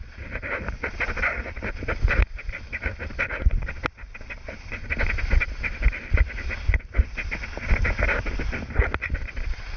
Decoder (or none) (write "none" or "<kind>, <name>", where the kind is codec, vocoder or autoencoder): none